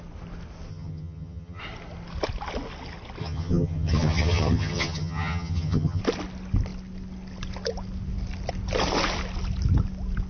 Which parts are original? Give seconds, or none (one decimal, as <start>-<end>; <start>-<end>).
0.0-0.7; 1.6-3.2; 6.0-10.3